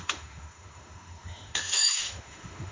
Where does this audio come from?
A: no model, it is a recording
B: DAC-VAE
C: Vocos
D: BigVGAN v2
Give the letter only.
B